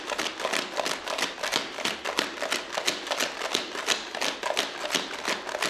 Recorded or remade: recorded